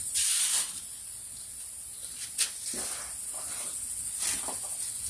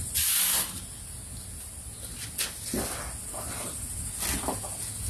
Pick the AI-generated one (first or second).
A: first